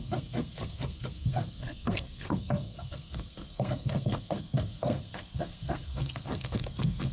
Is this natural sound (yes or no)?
no